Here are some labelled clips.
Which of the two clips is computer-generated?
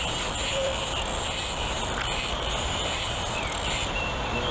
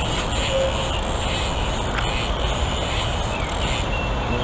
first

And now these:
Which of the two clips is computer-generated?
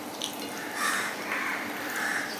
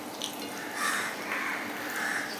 first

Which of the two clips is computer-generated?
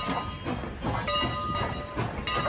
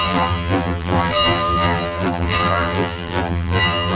second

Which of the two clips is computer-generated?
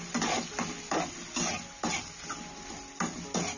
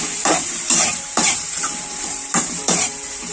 second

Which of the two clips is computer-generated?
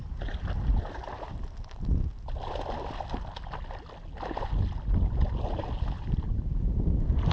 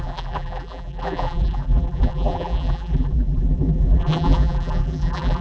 second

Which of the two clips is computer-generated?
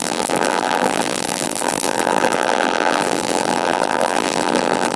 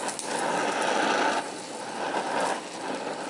first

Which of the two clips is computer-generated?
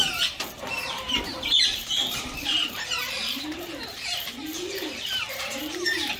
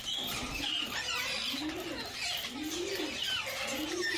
first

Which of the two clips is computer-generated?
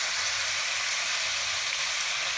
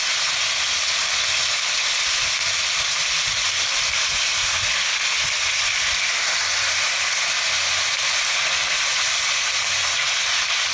first